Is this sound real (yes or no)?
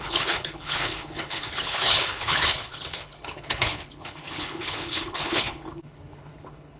no